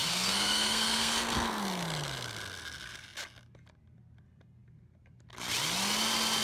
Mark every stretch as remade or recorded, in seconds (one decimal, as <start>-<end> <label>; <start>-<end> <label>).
0.0-1.6 remade; 1.6-6.4 recorded